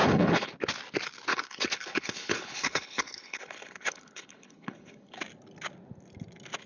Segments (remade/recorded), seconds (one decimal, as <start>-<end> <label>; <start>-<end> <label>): 0.0-0.5 remade; 0.5-1.3 recorded; 1.3-5.2 remade; 5.2-6.7 recorded